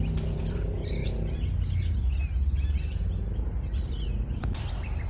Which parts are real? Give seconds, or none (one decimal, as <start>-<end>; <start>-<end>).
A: 1.0-3.7